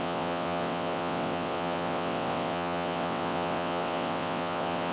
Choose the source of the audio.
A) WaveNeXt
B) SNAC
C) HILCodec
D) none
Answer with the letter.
A